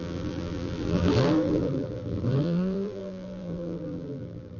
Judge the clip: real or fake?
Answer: fake